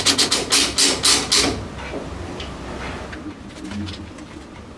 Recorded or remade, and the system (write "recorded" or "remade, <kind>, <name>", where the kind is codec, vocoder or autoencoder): recorded